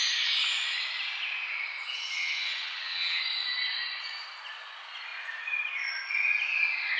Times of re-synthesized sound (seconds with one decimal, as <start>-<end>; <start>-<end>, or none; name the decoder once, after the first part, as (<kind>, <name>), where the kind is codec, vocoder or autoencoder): 1.9-3.2 (vocoder, WaveNeXt)